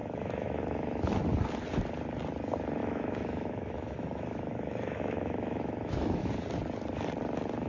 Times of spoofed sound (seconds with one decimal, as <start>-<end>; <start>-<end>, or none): 0.0-1.2; 2.8-6.3